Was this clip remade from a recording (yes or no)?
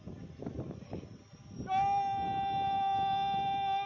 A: no